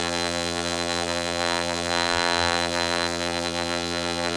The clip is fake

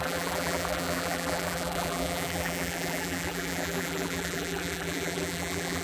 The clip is fake